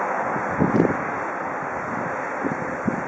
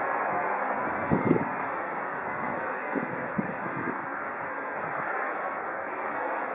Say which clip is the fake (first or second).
second